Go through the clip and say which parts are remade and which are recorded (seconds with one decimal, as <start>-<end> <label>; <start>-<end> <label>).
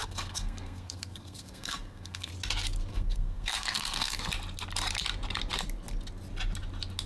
0.0-2.3 remade; 2.3-2.9 recorded; 2.9-4.2 remade; 4.2-7.1 recorded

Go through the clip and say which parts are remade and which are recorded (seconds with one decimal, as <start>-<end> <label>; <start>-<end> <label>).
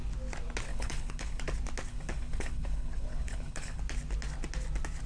0.0-0.7 recorded; 0.7-1.4 remade; 1.4-1.9 recorded; 1.9-3.8 remade; 3.8-5.1 recorded